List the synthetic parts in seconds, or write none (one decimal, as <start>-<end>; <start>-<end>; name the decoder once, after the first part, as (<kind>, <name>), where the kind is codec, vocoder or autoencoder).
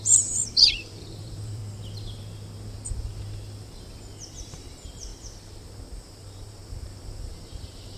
0.0-1.6 (vocoder, BigVGAN v2); 4.4-5.1; 6.0-8.0